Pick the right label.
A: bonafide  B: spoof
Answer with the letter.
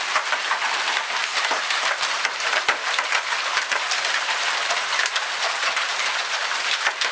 B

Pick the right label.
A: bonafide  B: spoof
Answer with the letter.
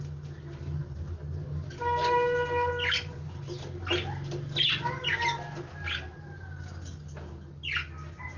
A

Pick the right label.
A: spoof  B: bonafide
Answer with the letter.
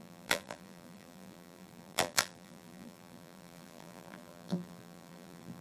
A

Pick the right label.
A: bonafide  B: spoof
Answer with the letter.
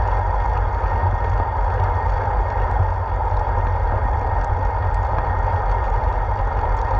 A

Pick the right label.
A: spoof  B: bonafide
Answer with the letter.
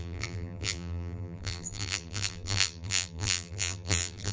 A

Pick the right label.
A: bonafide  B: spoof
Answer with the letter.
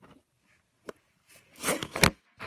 A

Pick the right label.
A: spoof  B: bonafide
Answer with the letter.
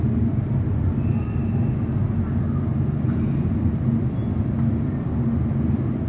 B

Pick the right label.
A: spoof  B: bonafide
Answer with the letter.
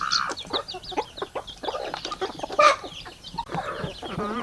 A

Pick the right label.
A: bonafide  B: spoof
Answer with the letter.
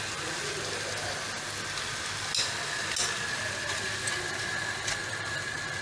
A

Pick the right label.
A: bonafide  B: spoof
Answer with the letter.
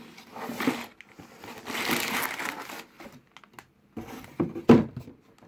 A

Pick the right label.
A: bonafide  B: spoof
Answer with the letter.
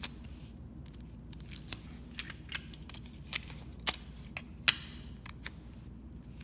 A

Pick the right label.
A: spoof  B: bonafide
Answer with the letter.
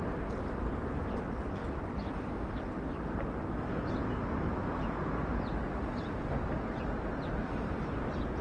B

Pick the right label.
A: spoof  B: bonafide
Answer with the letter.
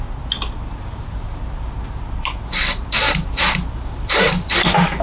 B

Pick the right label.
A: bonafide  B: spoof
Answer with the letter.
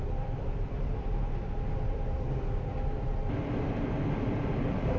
B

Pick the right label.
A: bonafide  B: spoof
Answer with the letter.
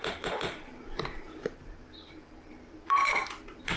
B